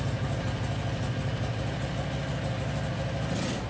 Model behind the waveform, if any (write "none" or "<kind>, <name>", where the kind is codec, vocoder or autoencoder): none